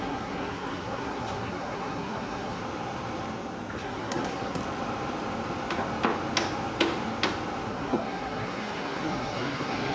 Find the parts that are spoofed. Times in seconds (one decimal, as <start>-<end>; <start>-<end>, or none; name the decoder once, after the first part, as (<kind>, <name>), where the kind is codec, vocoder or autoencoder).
0.0-2.6 (codec, SNAC); 3.8-4.6; 7.7-9.9

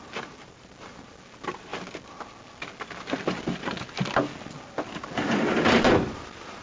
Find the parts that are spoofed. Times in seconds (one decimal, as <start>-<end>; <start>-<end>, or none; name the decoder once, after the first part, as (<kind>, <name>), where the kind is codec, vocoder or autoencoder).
0.0-1.7 (vocoder, BigVGAN v2); 4.9-6.6